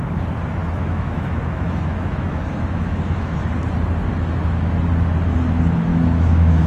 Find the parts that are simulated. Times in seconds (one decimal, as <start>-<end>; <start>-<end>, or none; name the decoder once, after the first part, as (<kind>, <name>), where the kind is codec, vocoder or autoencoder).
0.6-3.5 (autoencoder, DAC-VAE); 5.9-6.7

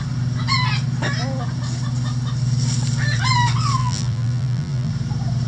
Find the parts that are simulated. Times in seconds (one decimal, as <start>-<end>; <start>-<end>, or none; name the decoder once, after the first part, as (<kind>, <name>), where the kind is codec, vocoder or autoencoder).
3.8-4.9 (vocoder, BigVGAN v2)

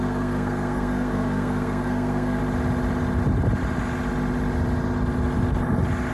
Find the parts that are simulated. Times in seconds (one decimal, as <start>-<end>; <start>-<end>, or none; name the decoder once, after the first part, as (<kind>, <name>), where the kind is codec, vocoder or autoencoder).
0.0-2.4 (codec, SNAC)

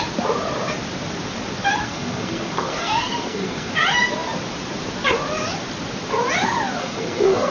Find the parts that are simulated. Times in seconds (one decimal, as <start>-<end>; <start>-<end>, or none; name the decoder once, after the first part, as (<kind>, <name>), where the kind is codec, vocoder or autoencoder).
1.8-3.7 (codec, SNAC); 6.8-7.5

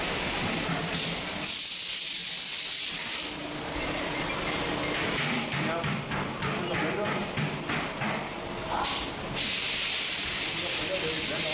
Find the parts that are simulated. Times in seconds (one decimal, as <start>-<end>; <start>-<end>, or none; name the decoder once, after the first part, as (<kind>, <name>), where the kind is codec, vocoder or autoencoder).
none